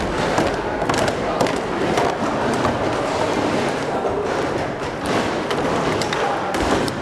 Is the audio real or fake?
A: real